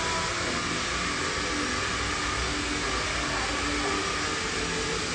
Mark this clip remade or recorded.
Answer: recorded